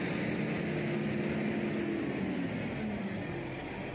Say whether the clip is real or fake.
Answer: real